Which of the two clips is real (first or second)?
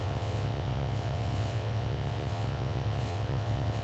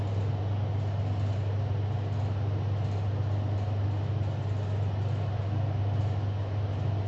second